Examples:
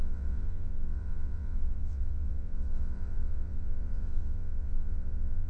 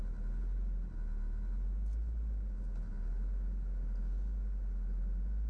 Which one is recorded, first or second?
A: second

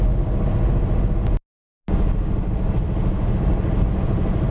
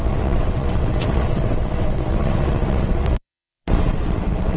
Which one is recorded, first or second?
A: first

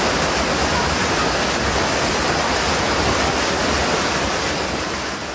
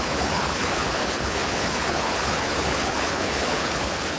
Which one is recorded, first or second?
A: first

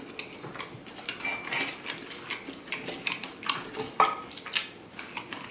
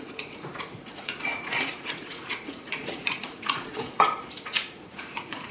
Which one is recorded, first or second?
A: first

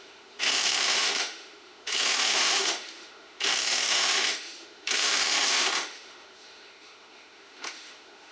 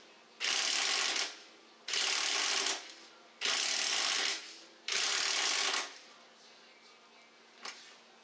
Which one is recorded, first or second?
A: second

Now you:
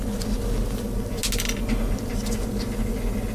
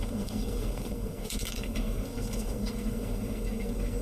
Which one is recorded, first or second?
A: first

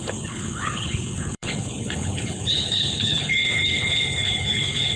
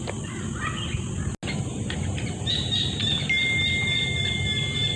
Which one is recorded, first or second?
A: second